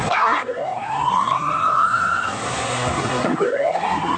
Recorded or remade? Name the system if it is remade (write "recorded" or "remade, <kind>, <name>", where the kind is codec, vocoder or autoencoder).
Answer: remade, codec, SNAC